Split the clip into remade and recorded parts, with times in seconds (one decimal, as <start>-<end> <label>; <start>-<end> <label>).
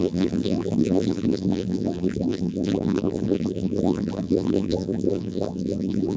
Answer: 0.0-6.2 remade